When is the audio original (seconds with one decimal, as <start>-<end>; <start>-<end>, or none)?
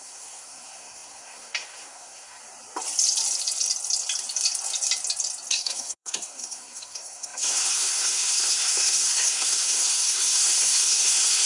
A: 2.4-5.5